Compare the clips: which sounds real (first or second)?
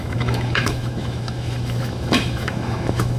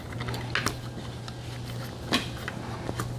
second